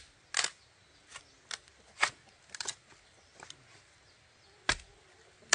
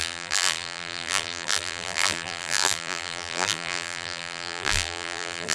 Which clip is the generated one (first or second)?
second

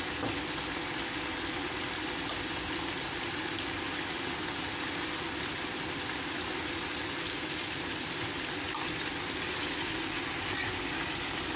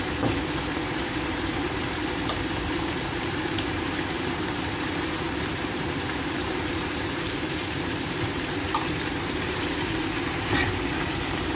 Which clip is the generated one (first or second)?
second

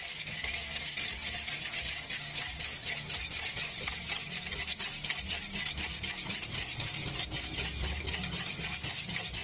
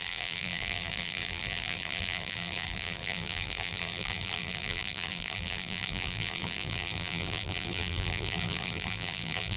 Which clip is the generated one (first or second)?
second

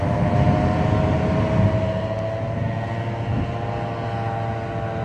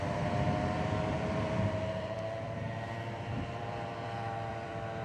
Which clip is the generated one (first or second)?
second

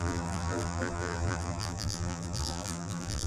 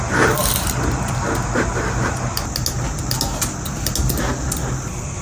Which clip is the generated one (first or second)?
first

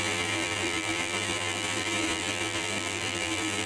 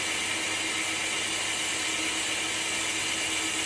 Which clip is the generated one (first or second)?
first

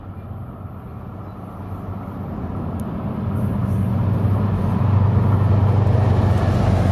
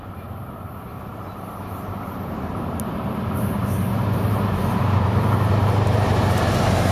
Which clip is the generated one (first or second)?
second